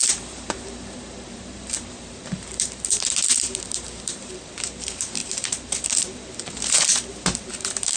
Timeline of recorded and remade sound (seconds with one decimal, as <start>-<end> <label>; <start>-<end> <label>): 0.0-8.0 remade